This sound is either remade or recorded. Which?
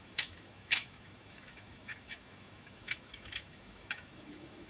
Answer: remade